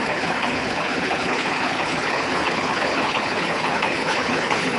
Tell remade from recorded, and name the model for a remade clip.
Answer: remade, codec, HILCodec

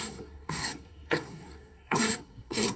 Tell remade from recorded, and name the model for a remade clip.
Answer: remade, codec, SNAC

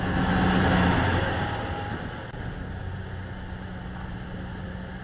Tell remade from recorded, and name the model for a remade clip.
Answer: recorded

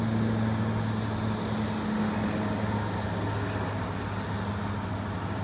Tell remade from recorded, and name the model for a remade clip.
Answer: recorded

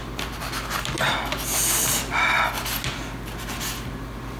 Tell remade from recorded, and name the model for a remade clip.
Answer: recorded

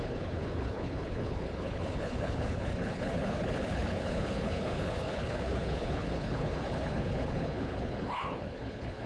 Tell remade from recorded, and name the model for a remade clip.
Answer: remade, codec, HILCodec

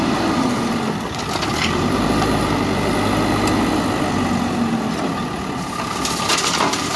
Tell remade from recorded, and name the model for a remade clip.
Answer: recorded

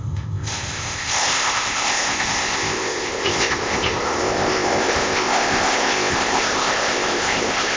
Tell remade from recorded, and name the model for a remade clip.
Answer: remade, codec, ZipCodec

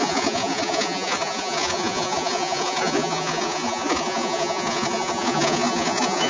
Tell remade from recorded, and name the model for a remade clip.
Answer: remade, vocoder, Vocos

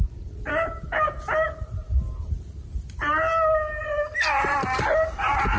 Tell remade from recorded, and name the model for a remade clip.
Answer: recorded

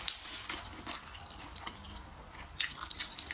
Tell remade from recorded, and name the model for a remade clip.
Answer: remade, vocoder, BigVGAN v2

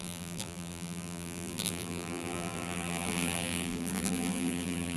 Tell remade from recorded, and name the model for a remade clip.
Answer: remade, vocoder, BigVGAN v2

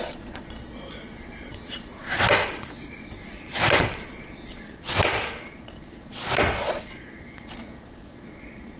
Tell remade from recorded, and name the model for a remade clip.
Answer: remade, vocoder, Vocos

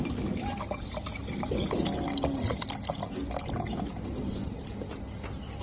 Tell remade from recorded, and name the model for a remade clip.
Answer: recorded